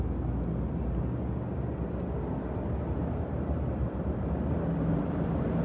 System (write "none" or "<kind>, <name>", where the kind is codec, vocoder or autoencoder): none